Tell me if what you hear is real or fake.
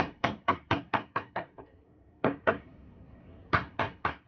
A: fake